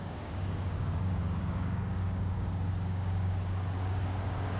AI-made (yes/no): yes